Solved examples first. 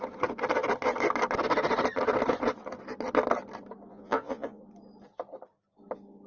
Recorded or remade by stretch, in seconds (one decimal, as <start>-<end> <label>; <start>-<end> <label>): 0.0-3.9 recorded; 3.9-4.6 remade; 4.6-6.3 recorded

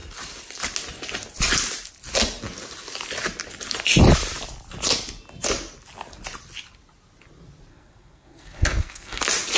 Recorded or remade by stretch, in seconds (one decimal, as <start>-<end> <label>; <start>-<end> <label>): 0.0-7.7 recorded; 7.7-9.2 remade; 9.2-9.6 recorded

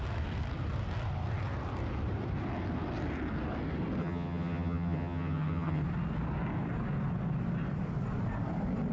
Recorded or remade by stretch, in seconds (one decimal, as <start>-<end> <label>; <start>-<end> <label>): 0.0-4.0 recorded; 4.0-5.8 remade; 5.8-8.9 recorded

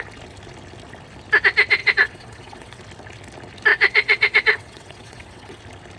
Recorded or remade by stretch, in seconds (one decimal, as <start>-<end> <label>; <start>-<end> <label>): 0.0-1.8 recorded; 1.8-2.8 remade; 2.8-3.7 recorded; 3.7-5.6 remade; 5.6-6.0 recorded

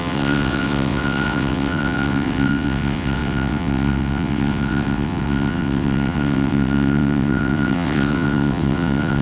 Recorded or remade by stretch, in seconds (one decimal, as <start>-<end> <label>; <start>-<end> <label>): 0.0-9.2 remade